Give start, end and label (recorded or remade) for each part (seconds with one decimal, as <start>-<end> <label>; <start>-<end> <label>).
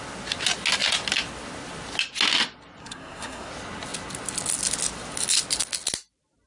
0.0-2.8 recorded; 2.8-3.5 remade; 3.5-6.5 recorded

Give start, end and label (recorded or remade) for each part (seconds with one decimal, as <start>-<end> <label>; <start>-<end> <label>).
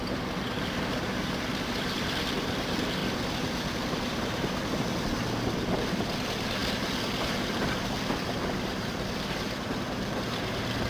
0.0-6.6 remade; 6.6-7.4 recorded; 7.4-10.9 remade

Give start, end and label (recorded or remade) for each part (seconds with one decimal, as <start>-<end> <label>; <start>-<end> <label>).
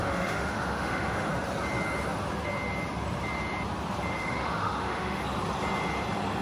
0.0-1.3 remade; 1.3-4.1 recorded; 4.1-5.2 remade; 5.2-6.4 recorded